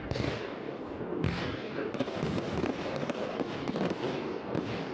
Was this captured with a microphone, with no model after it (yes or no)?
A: no